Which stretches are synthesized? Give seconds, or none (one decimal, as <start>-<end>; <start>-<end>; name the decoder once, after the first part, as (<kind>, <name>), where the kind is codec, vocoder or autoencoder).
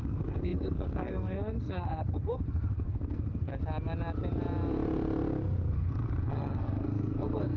0.0-3.5 (codec, SNAC); 5.7-7.6